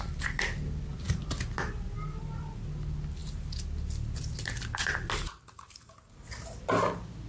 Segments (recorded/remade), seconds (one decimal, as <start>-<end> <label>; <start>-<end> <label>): 0.0-7.3 recorded